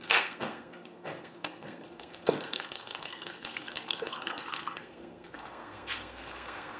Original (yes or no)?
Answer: no